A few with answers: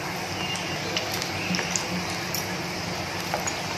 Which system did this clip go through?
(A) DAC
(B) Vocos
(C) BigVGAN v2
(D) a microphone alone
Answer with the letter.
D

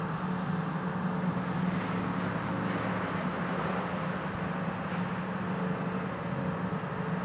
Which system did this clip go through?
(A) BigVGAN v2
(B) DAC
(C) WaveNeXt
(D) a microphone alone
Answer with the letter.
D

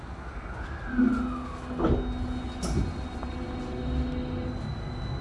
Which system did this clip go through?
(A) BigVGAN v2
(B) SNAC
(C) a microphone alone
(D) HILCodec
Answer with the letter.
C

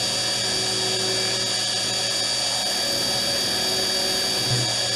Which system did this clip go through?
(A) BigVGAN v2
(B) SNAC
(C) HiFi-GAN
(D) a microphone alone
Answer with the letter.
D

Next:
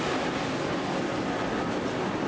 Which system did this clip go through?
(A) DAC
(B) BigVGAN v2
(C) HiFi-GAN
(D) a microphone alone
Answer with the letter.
D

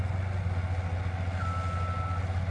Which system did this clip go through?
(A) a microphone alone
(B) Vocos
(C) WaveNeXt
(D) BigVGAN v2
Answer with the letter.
A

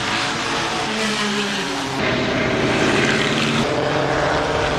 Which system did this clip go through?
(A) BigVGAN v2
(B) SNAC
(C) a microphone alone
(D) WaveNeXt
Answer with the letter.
A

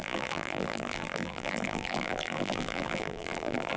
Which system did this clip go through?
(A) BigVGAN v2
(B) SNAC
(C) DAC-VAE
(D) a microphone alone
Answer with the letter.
A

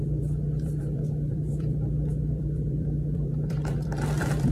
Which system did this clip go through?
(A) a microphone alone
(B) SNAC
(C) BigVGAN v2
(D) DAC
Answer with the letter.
C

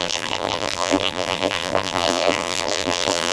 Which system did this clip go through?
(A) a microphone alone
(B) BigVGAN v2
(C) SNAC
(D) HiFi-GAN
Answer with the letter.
B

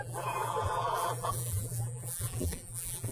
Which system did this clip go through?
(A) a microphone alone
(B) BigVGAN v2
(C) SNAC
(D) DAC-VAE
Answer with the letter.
B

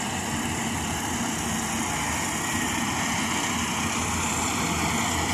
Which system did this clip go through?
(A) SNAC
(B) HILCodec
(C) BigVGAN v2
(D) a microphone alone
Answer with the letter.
C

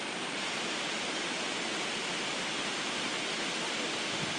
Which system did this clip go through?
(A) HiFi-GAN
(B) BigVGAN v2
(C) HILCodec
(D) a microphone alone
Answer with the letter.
D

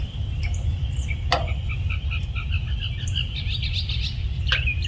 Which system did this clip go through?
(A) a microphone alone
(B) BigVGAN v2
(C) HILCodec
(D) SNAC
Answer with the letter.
A